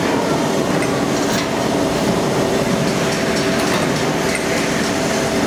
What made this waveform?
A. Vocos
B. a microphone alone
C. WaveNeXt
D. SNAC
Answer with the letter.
B